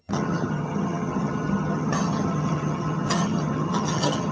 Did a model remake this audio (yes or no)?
yes